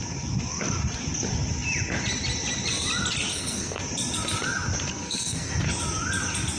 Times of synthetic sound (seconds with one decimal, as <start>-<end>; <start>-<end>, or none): 3.3-3.8; 4.9-5.5